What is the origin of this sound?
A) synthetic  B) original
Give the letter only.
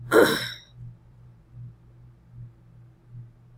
A